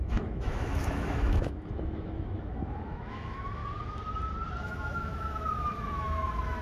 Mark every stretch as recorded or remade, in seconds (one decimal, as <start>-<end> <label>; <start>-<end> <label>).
0.0-3.6 remade; 3.6-4.6 recorded; 4.6-6.6 remade